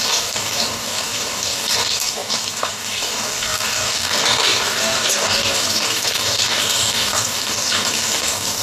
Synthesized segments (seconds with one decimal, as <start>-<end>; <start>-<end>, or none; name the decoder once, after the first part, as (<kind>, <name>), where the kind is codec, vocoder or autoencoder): 0.0-8.6 (codec, DAC)